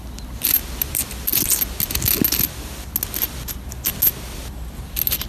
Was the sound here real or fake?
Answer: real